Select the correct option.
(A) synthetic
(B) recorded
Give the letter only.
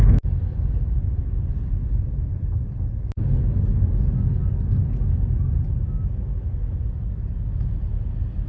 B